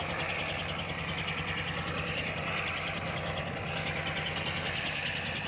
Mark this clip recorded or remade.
recorded